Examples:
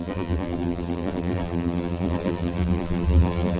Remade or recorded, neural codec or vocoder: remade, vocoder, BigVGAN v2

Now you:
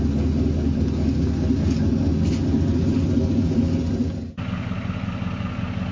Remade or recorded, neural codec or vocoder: recorded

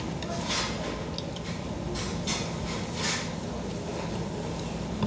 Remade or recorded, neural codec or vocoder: recorded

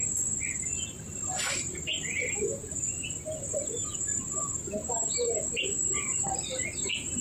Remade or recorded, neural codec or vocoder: recorded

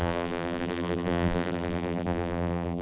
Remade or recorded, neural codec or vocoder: remade, vocoder, BigVGAN v2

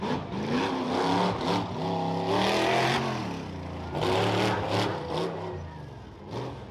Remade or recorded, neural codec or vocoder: recorded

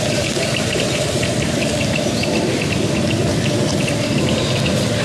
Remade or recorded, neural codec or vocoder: remade, vocoder, BigVGAN v2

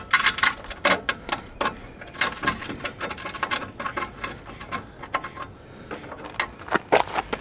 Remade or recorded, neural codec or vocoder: recorded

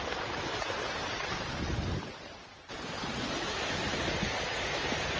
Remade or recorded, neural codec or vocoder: remade, vocoder, BigVGAN v2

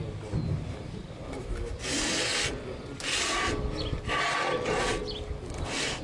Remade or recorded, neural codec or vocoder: recorded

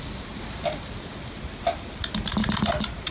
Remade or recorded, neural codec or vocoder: recorded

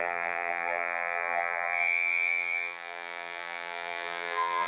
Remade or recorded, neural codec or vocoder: remade, vocoder, BigVGAN v2